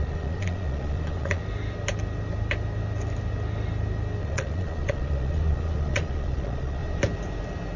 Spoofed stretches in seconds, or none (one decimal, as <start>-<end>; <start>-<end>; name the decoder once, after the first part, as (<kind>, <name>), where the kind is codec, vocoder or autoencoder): 0.0-1.4 (vocoder, Vocos); 4.2-6.8